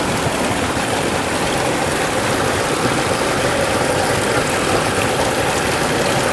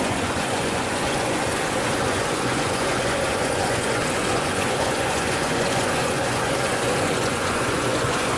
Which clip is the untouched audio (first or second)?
first